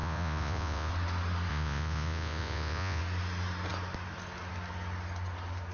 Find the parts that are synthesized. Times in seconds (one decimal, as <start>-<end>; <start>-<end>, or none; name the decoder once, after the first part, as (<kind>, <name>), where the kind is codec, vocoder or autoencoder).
0.0-0.9 (vocoder, Vocos); 1.5-3.0